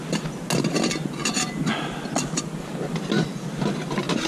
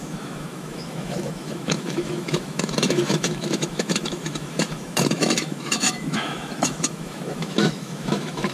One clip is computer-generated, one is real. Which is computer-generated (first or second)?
second